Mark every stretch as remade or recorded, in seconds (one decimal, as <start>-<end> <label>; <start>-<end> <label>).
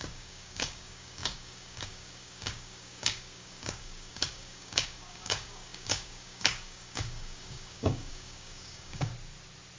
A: 0.0-9.1 remade; 9.1-9.8 recorded